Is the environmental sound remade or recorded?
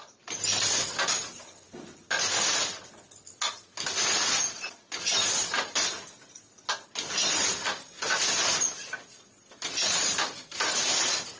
recorded